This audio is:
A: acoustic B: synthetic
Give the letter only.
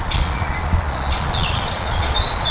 B